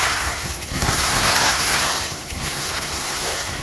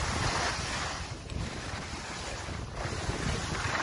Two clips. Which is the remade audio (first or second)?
first